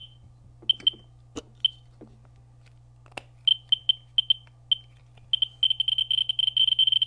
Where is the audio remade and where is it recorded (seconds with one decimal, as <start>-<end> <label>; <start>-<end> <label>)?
0.0-7.1 recorded